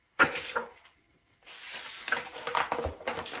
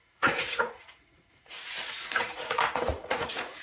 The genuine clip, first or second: first